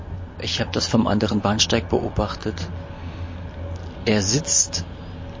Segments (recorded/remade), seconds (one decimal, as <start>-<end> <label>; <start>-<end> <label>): 0.0-0.7 recorded; 0.7-1.4 remade; 1.4-5.4 recorded